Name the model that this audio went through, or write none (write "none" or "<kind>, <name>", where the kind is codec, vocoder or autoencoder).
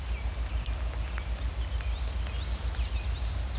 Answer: none